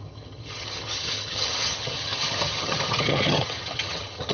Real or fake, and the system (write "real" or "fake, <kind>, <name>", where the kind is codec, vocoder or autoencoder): fake, vocoder, HiFi-GAN